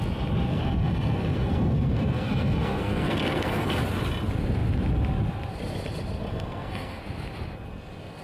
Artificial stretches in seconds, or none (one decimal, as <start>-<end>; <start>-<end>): 0.5-3.8; 6.3-7.0